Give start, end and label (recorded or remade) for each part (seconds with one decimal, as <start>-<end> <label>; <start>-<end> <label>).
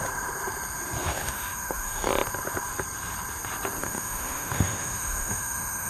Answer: 0.0-1.1 recorded; 1.1-2.1 remade; 2.1-3.8 recorded; 3.8-5.9 remade